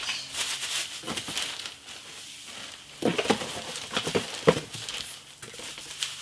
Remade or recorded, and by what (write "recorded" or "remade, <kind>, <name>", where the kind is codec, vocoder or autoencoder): recorded